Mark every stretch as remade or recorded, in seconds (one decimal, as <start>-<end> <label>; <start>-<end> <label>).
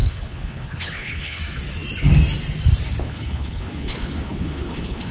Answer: 0.0-1.4 remade; 1.4-3.0 recorded; 3.0-5.1 remade